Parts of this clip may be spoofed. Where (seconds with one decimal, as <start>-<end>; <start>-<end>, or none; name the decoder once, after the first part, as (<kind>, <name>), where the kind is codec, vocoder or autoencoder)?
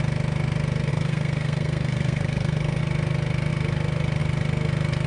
0.9-2.8 (codec, SNAC)